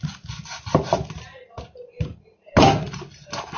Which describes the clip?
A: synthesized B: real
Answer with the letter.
B